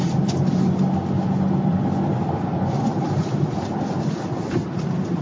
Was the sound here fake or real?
real